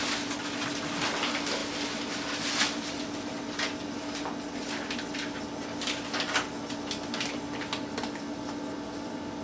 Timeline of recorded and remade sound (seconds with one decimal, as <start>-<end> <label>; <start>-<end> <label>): 0.0-9.4 recorded